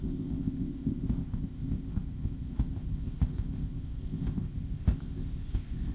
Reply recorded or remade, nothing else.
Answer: remade